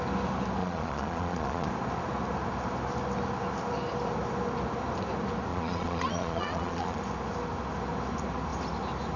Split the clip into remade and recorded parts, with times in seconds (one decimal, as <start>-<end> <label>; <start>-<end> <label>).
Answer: 0.0-0.6 recorded; 0.6-1.7 remade; 1.7-5.5 recorded; 5.5-7.0 remade; 7.0-9.2 recorded